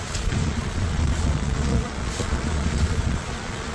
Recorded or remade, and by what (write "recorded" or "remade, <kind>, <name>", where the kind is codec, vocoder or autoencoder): remade, vocoder, Vocos